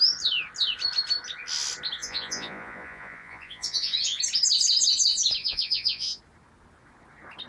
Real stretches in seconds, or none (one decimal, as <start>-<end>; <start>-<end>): 0.0-2.0; 4.2-5.4; 6.2-7.5